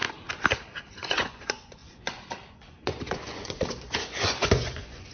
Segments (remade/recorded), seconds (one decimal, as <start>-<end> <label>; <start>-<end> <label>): 0.0-0.9 recorded; 0.9-5.1 remade